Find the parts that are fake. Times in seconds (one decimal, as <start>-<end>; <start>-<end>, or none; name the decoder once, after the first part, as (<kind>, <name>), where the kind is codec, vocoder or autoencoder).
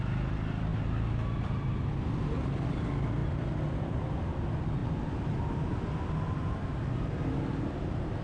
none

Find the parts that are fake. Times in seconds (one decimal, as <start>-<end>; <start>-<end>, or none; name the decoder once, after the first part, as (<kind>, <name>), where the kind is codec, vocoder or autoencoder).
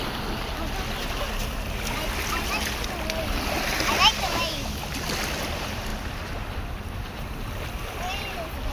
none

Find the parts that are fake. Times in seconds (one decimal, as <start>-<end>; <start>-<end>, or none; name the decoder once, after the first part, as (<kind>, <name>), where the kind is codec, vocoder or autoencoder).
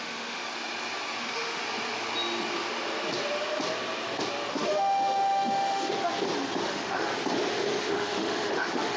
0.0-0.4 (autoencoder, DAC-VAE); 1.2-1.6; 4.5-5.9; 6.6-7.1; 7.8-9.0